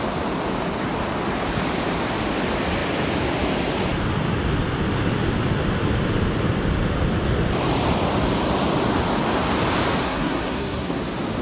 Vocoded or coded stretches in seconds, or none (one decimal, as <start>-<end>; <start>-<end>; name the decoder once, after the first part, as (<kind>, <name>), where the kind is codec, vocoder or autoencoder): 10.0-11.0 (codec, SNAC)